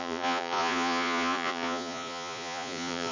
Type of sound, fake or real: fake